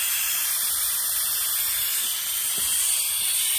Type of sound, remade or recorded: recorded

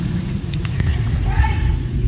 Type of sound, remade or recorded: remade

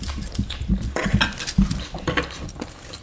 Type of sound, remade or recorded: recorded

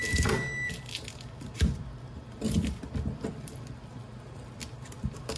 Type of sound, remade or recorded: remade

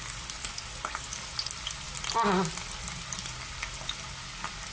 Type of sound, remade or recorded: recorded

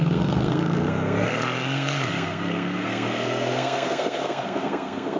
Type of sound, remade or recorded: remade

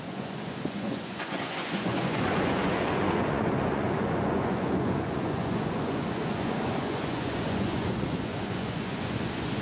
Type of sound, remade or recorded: remade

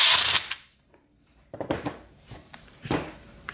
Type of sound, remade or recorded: remade